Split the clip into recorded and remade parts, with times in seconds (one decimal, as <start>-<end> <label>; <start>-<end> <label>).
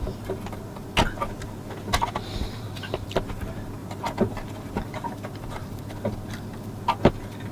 0.0-3.8 recorded; 3.8-5.8 remade; 5.8-7.5 recorded